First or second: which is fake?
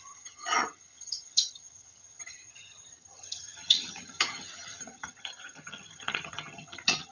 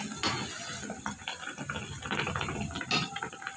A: first